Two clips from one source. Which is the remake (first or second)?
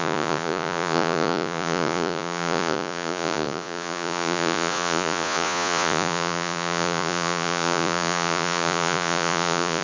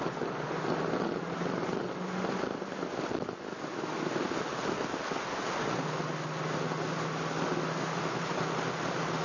first